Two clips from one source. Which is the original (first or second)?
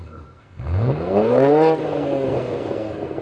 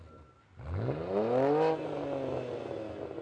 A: second